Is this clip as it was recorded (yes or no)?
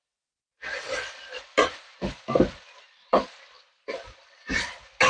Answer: yes